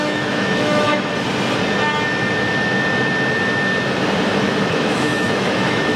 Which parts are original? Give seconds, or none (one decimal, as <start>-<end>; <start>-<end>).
1.1-4.7